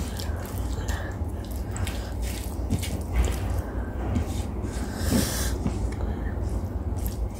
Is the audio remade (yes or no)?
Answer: yes